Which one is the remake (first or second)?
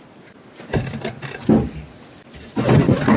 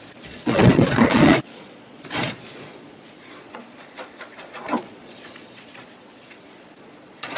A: second